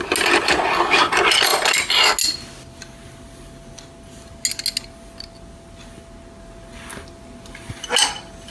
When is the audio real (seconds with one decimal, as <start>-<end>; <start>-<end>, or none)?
0.0-8.5